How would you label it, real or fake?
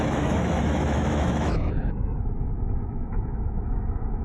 fake